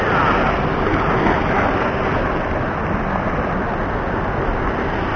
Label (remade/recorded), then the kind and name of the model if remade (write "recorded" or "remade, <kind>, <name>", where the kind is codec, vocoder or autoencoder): recorded